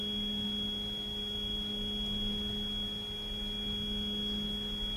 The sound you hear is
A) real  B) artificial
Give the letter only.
A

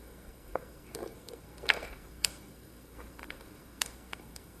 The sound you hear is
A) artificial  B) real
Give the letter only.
A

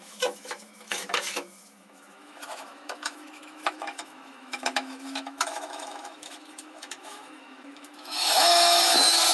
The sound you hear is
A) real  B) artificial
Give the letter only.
B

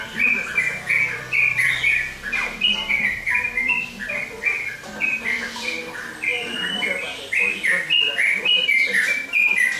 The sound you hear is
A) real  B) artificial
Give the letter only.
B